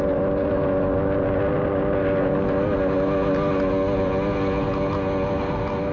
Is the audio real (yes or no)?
yes